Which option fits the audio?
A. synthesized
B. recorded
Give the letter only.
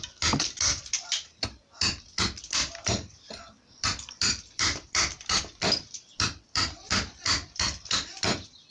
A